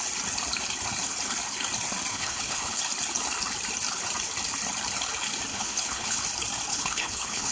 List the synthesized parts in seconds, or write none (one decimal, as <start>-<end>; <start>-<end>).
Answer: 2.1-2.8; 5.5-6.2; 6.7-7.5